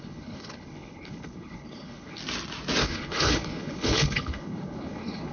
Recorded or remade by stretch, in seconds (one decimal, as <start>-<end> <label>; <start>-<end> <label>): 0.0-2.2 remade; 2.2-2.8 recorded; 2.8-5.3 remade